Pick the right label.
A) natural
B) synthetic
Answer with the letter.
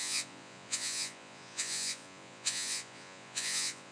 B